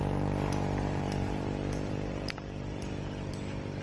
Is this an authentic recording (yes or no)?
no